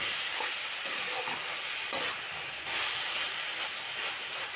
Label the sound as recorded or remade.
remade